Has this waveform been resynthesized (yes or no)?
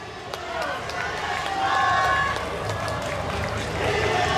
no